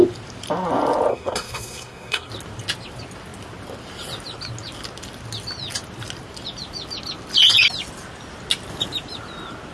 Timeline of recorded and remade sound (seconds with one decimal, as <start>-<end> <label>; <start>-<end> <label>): 0.0-1.1 recorded; 1.1-2.3 remade; 2.3-9.7 recorded